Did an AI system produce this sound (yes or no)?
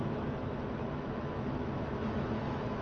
yes